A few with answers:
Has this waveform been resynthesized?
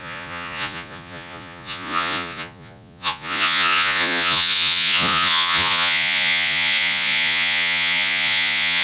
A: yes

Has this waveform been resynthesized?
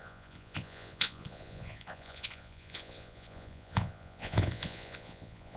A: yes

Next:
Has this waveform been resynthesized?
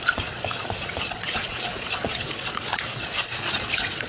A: yes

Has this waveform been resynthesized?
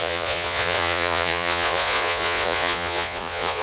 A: yes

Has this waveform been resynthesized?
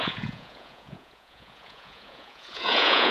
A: yes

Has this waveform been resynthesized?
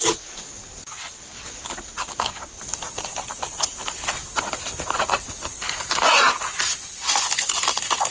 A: no